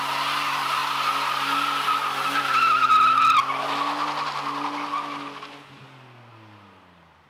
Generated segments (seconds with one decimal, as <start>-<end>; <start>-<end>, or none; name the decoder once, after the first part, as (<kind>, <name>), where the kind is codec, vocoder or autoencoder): none